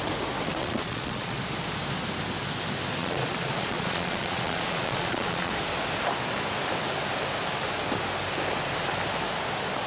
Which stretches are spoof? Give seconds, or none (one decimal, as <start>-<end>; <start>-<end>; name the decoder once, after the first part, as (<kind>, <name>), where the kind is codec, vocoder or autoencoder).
0.6-1.4 (vocoder, Vocos); 3.0-5.5